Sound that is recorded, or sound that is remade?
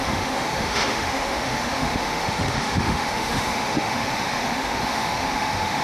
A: remade